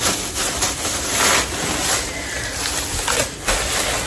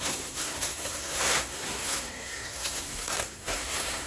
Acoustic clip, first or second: first